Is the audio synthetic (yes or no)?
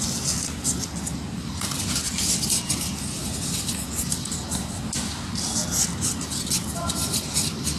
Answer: no